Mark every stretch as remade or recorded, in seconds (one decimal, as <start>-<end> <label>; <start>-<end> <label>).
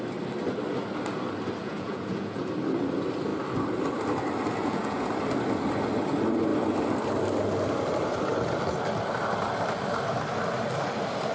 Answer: 0.0-1.6 recorded; 1.6-2.4 remade; 2.4-4.6 recorded; 4.6-5.1 remade; 5.1-11.3 recorded